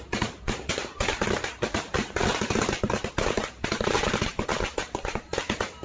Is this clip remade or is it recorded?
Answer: remade